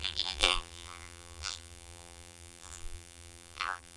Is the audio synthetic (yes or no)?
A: yes